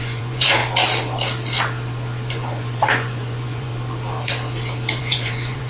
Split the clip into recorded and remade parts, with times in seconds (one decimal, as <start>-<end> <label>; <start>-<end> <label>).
0.0-0.6 remade; 0.6-2.3 recorded; 2.3-3.7 remade; 3.7-5.0 recorded; 5.0-5.7 remade